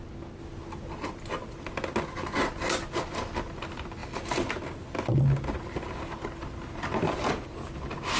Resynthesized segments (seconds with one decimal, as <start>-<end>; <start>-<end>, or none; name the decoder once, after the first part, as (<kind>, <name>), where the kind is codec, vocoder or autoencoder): none